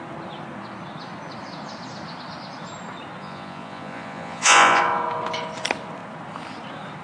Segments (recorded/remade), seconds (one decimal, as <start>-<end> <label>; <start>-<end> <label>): 0.0-3.2 recorded; 3.2-4.8 remade; 4.8-7.0 recorded